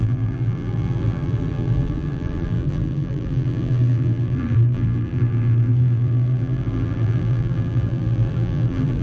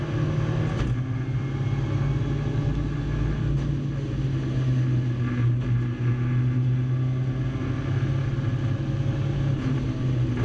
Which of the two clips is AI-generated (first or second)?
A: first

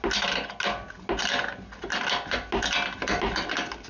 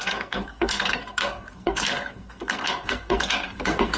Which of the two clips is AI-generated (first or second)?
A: second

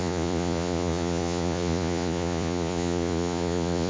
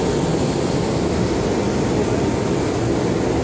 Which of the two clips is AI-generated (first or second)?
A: first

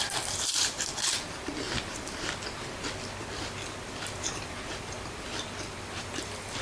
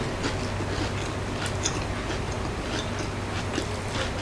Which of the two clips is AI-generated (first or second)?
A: first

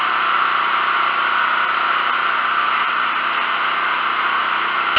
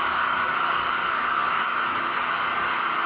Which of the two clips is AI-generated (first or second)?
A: second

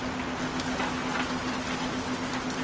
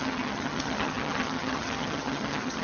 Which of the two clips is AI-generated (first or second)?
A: second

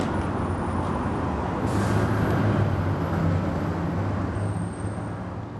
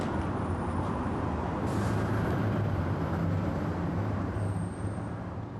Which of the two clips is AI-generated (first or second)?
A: second